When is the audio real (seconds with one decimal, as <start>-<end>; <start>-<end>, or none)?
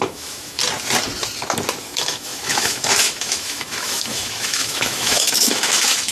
0.6-1.8